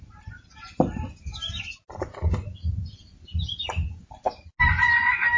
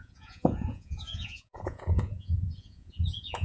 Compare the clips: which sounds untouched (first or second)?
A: first